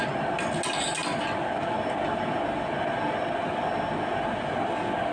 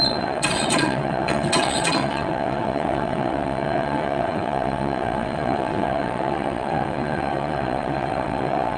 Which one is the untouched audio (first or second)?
first